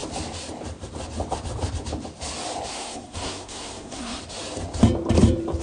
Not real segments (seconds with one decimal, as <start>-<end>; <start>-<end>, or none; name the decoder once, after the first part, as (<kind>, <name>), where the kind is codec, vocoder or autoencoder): 2.7-4.2 (codec, SNAC)